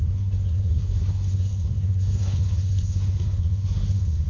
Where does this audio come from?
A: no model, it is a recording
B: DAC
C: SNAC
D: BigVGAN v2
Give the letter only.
C